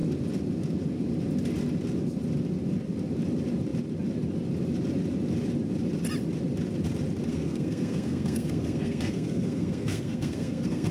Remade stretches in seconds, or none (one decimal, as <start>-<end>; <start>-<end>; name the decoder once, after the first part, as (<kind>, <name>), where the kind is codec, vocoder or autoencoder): 7.3-10.9 (codec, SNAC)